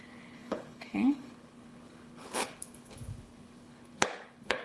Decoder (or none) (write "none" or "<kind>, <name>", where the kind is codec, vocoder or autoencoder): codec, HILCodec